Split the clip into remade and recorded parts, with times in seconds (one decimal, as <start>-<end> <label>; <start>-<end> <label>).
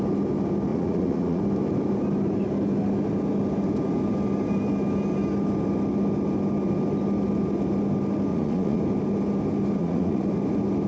0.0-0.7 recorded; 0.7-1.4 remade; 1.4-8.3 recorded; 8.3-8.8 remade; 8.8-9.8 recorded; 9.8-10.3 remade; 10.3-10.9 recorded